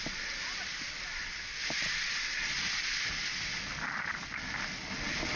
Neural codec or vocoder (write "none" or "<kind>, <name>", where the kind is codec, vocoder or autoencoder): none